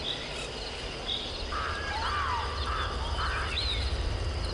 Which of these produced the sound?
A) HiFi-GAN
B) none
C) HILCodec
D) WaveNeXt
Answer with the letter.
B